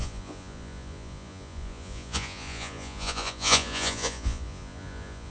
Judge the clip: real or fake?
fake